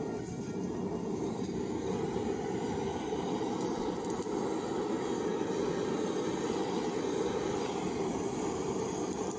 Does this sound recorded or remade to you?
recorded